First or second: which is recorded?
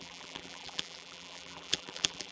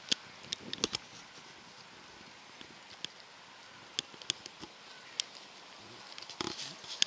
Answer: second